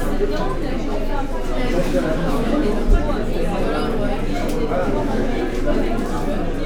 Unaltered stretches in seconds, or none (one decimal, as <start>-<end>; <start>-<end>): 0.0-1.8; 2.6-4.8; 5.4-6.7